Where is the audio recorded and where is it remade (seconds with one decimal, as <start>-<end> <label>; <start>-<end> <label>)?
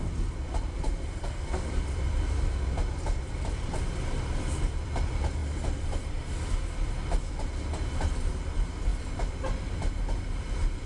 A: 0.0-1.2 recorded; 1.2-1.7 remade; 1.7-10.9 recorded